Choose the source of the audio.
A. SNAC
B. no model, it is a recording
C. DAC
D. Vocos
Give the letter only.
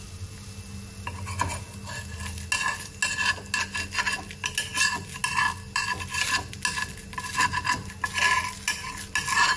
B